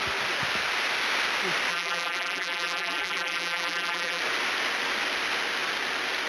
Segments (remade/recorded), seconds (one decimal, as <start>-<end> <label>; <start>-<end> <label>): 0.0-1.7 recorded; 1.7-4.2 remade; 4.2-6.3 recorded